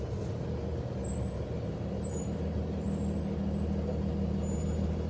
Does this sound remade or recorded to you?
recorded